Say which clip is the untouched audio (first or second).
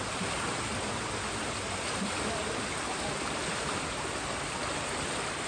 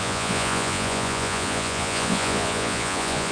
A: first